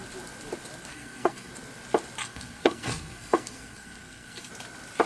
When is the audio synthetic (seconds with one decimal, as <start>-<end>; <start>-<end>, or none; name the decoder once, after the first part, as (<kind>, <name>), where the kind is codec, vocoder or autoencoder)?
0.9-1.5 (codec, SNAC); 2.2-4.5